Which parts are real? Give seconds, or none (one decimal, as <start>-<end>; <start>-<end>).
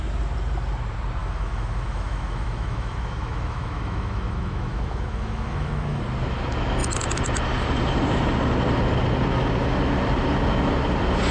0.0-1.2; 6.0-11.3